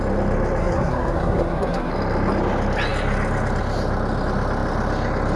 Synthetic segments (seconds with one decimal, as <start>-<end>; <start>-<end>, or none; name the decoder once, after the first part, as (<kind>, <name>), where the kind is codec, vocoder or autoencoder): 0.6-1.9 (codec, SNAC)